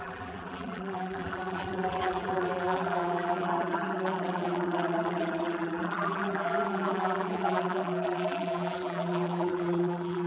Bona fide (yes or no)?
no